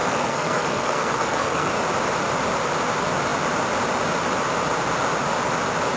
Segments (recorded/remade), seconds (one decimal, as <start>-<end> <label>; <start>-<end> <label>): 0.0-1.7 remade; 1.7-6.0 recorded

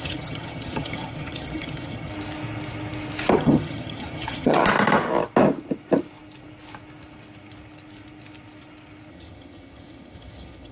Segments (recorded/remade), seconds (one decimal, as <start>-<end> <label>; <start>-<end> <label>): 0.0-2.1 remade; 2.1-3.3 recorded; 3.3-4.6 remade; 4.6-9.1 recorded; 9.1-10.7 remade

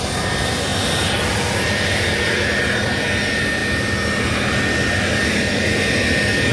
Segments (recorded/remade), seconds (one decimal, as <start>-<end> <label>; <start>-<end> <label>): 0.0-6.5 recorded

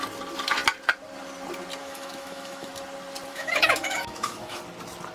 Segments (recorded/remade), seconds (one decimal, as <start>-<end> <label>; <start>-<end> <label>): 0.0-1.8 recorded; 1.8-2.7 remade; 2.7-3.3 recorded; 3.3-4.6 remade; 4.6-5.1 recorded

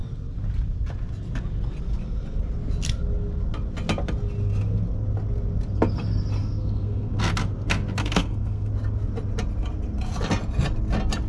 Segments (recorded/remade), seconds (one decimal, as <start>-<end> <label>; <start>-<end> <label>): 0.0-6.4 recorded; 6.4-7.2 remade; 7.2-8.0 recorded; 8.0-8.7 remade; 8.7-11.3 recorded

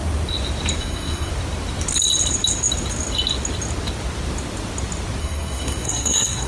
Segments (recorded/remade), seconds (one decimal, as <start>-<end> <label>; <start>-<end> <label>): 0.0-0.8 recorded; 0.8-1.3 remade; 1.3-5.2 recorded; 5.2-6.5 remade